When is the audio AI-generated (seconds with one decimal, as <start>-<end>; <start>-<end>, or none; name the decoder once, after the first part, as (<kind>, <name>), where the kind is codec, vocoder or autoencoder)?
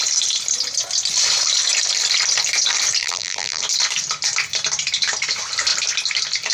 3.0-3.6 (vocoder, BigVGAN v2)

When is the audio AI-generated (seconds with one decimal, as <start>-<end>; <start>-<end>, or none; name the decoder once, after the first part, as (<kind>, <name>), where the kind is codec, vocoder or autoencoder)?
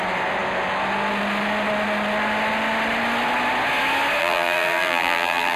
4.2-5.6 (vocoder, BigVGAN v2)